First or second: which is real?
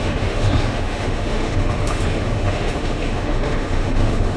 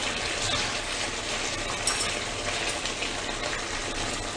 second